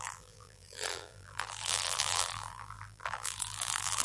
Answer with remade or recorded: remade